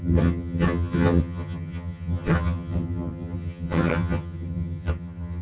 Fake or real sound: fake